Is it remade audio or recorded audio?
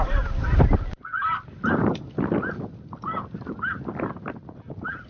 recorded